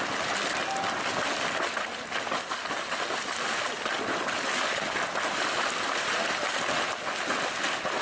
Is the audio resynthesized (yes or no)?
no